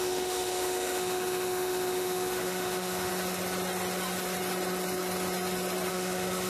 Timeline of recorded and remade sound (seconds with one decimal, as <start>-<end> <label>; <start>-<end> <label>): 0.0-3.1 remade; 3.1-5.9 recorded; 5.9-6.5 remade